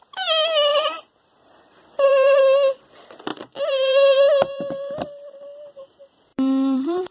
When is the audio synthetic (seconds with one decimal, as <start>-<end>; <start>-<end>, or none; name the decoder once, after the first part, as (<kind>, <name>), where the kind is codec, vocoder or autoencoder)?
0.7-2.4 (vocoder, BigVGAN v2); 3.3-5.4; 6.3-7.1